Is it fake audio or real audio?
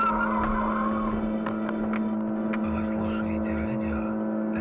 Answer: real